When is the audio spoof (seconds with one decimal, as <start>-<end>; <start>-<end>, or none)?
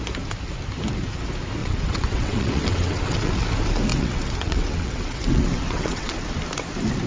1.6-3.3; 3.9-6.1